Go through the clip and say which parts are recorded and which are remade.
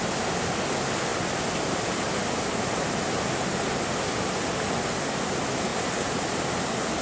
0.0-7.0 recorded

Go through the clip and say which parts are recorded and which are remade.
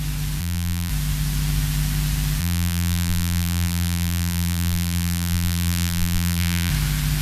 0.0-0.4 recorded; 0.4-0.9 remade; 0.9-2.4 recorded; 2.4-6.7 remade; 6.7-7.2 recorded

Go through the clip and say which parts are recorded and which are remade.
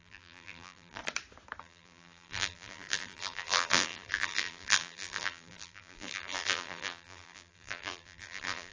0.0-1.0 remade; 1.0-1.6 recorded; 1.6-8.7 remade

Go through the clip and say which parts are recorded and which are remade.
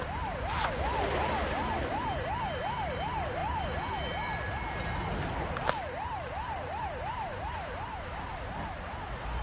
0.0-9.4 recorded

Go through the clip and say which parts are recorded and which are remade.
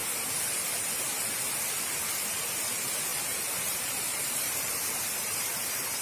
0.0-3.1 recorded; 3.1-6.0 remade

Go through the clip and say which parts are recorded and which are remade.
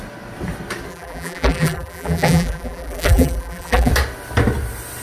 0.0-0.9 recorded; 0.9-3.9 remade; 3.9-5.0 recorded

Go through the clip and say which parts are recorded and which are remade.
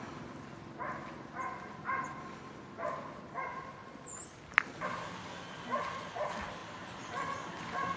0.0-8.0 recorded